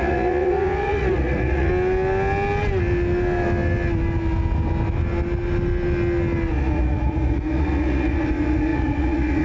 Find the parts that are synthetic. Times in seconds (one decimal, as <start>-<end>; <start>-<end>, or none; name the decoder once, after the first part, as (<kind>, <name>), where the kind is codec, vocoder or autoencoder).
0.0-1.7 (vocoder, Vocos); 6.5-9.4